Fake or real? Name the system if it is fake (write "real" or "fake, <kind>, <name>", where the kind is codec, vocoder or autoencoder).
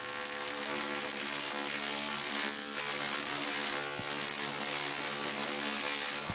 real